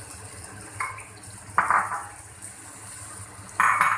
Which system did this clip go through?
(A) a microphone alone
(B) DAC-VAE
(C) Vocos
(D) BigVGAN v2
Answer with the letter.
A